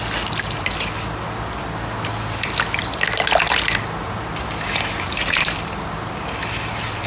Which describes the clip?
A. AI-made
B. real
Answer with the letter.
B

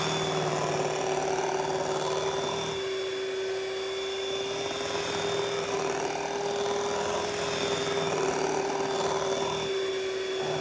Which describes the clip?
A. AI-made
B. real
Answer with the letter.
B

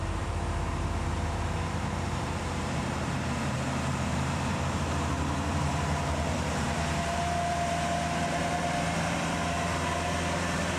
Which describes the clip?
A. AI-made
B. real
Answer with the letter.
A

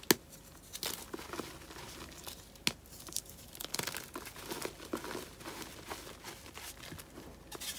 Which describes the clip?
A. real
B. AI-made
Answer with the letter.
A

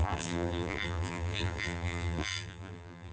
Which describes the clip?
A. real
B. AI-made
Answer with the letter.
B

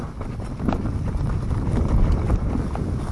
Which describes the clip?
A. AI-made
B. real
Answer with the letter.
B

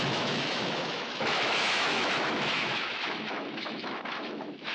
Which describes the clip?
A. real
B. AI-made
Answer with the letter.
B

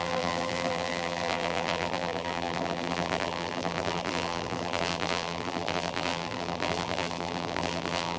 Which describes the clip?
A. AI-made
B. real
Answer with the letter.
A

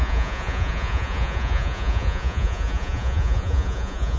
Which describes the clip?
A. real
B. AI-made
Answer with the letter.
B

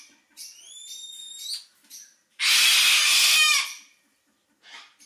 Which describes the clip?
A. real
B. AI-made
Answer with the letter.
A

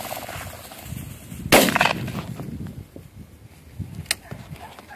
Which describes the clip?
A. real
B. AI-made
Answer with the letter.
A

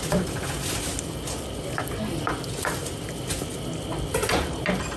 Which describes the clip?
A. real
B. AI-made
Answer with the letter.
A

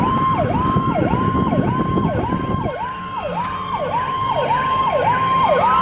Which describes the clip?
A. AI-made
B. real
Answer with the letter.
B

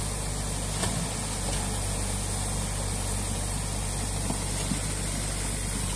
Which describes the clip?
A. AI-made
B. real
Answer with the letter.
B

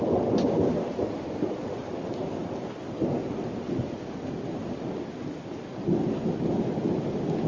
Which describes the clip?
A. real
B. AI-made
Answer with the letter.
A